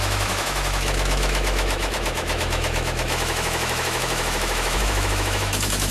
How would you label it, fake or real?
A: fake